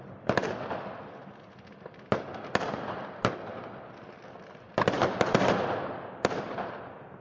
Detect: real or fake real